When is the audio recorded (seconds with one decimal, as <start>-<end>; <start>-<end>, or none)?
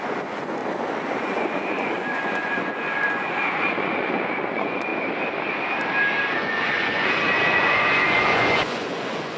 0.6-1.2; 4.9-6.2